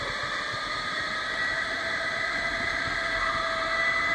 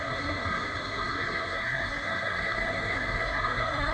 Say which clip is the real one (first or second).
first